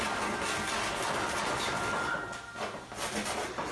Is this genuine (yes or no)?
yes